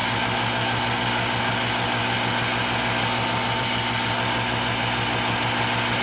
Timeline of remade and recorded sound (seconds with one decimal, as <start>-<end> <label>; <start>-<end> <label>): 0.0-6.0 recorded